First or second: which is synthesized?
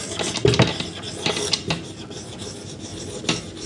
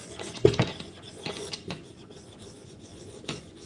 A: second